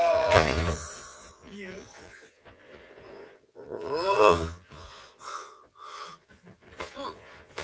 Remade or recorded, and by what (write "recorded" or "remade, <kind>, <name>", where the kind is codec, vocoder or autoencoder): remade, vocoder, Vocos